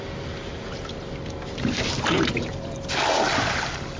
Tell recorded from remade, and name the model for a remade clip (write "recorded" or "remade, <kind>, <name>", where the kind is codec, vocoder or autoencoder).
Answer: recorded